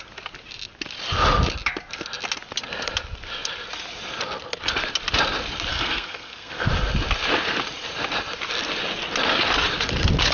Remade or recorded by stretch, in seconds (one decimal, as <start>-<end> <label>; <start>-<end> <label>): 0.0-5.7 recorded; 5.7-6.7 remade; 6.7-10.3 recorded